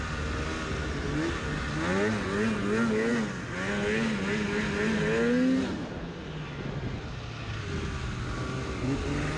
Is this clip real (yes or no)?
yes